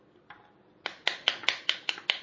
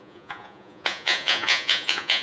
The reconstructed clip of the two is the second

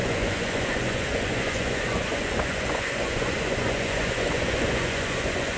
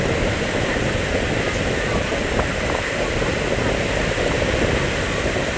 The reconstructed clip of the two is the first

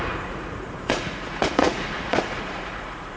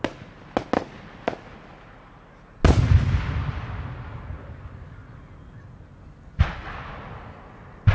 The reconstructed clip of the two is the first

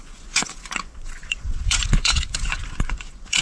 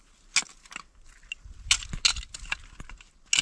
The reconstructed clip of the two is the first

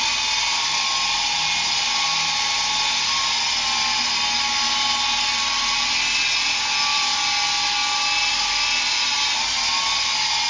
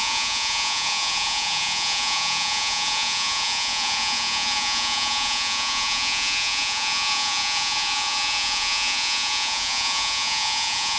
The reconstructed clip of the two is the second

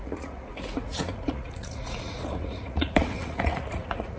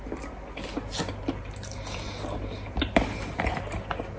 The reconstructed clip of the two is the first